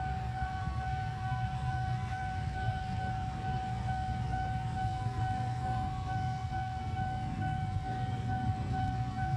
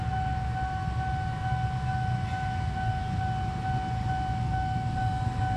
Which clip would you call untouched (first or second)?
second